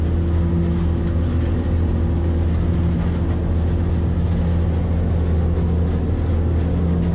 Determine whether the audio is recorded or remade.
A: recorded